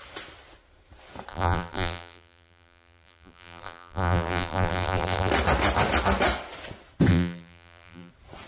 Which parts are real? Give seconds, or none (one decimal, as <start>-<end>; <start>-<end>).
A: 0.0-1.3; 5.3-7.1; 8.1-8.5